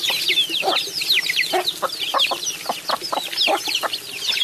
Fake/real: real